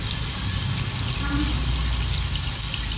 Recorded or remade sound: recorded